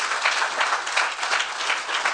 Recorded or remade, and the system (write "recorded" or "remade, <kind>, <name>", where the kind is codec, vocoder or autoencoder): recorded